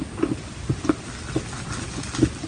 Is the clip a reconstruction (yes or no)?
no